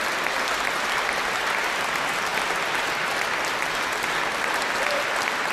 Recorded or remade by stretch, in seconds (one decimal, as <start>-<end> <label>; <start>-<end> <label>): 0.0-5.5 recorded